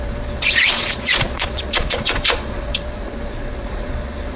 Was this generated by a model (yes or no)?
yes